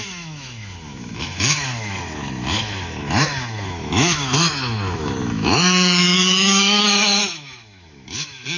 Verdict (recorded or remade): remade